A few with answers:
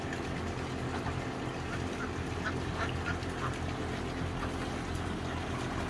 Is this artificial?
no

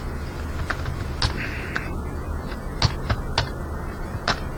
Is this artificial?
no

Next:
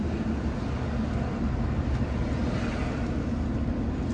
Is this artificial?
no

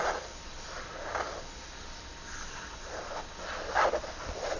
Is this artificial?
yes